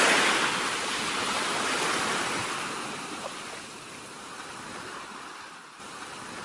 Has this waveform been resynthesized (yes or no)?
no